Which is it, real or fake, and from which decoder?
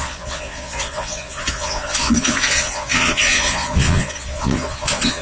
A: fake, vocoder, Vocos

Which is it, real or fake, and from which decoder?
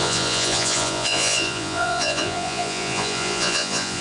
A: fake, vocoder, Vocos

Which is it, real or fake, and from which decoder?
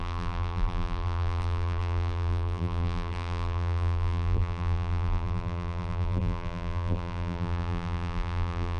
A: fake, vocoder, BigVGAN v2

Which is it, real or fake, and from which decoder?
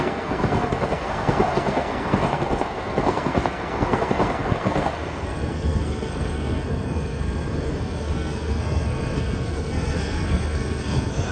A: fake, codec, SNAC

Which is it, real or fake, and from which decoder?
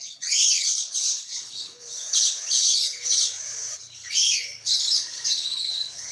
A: fake, codec, HILCodec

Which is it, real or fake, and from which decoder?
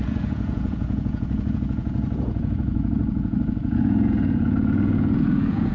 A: fake, vocoder, Vocos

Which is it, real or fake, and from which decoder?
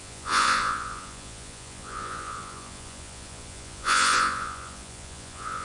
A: fake, vocoder, Vocos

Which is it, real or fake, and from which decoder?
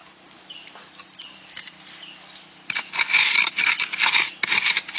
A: real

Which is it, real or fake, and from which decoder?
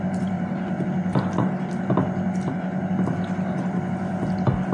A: real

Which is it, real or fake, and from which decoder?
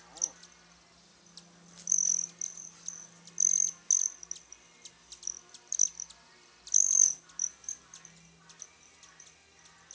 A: real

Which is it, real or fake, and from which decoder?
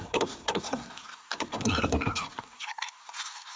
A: fake, codec, SNAC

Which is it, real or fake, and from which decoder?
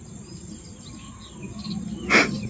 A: real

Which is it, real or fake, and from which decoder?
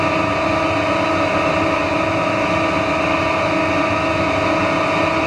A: real